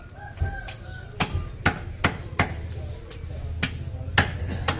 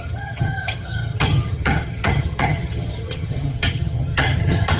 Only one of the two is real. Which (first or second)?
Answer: first